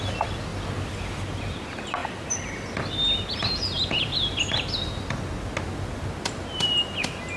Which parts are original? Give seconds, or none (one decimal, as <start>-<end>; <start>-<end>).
0.0-7.4